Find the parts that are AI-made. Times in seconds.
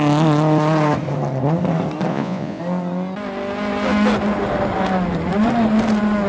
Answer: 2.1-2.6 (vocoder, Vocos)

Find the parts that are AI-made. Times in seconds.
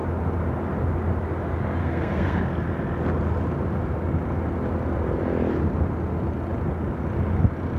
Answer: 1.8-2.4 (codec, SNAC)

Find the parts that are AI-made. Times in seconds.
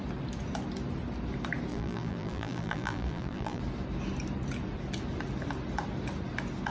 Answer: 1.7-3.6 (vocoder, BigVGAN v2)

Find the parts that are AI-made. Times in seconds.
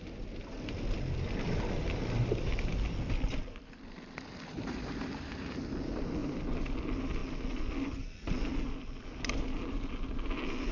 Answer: none